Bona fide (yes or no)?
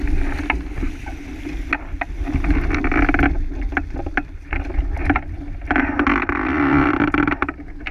yes